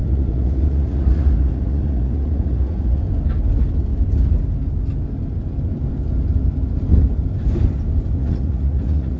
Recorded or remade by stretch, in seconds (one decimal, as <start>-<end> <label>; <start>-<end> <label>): 0.0-3.0 remade; 3.0-8.2 recorded; 8.2-9.2 remade

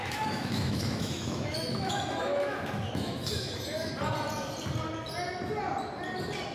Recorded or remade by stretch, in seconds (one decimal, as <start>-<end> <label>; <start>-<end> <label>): 0.0-3.9 remade; 3.9-6.5 recorded

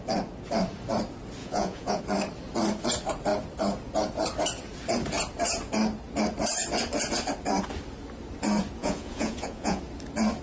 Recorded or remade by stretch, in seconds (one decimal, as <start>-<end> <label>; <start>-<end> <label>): 0.0-1.4 recorded; 1.4-2.0 remade; 2.0-8.8 recorded; 8.8-9.8 remade; 9.8-10.4 recorded

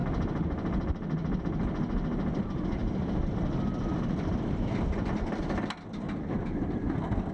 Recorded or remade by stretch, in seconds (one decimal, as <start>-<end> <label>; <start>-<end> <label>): 0.0-1.4 recorded; 1.4-7.3 remade